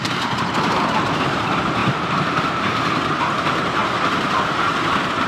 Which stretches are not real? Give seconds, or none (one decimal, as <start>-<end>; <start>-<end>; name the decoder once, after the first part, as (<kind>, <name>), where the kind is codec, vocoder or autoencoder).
0.0-3.8 (vocoder, BigVGAN v2); 4.3-5.3